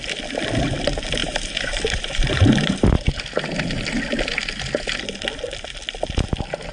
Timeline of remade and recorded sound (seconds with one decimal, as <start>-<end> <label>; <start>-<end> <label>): 0.0-1.2 recorded; 1.2-3.2 remade; 3.2-6.7 recorded